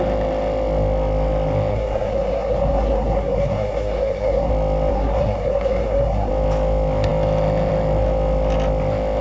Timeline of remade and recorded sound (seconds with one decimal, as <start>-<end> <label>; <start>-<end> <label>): 0.0-1.7 recorded; 1.7-4.5 remade; 4.5-4.9 recorded; 4.9-6.3 remade; 6.3-9.2 recorded